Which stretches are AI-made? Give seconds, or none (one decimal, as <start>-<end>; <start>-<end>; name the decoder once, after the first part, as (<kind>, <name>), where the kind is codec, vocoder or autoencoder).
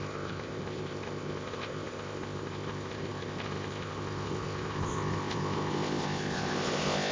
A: 0.0-7.1 (codec, ZipCodec)